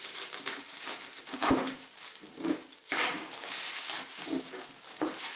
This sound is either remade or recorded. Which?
remade